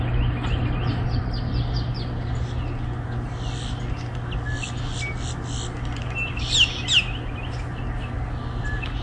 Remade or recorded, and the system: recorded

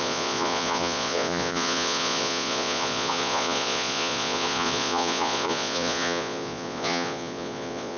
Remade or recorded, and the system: remade, vocoder, Vocos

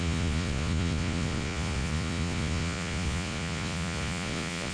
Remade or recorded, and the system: remade, vocoder, Vocos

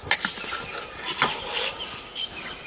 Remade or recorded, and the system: recorded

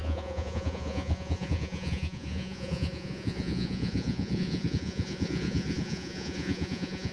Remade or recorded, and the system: remade, vocoder, Vocos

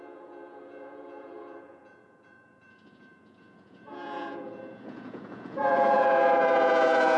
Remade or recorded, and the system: remade, vocoder, Vocos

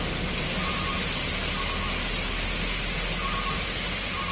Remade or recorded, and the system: recorded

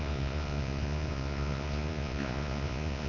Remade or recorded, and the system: remade, vocoder, Vocos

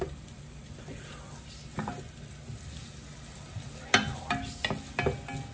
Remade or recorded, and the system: recorded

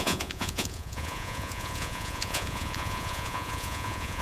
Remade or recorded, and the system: remade, vocoder, Vocos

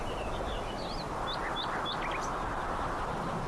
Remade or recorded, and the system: recorded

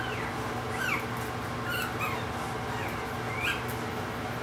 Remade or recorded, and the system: recorded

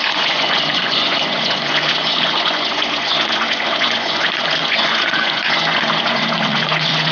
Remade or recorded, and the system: remade, vocoder, Vocos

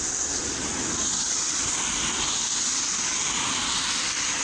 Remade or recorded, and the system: recorded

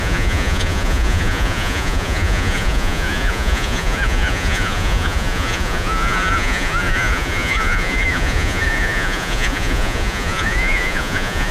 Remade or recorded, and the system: remade, vocoder, Vocos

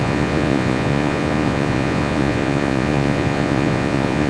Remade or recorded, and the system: remade, vocoder, Vocos